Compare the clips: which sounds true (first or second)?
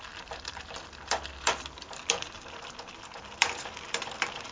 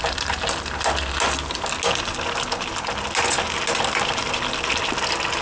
second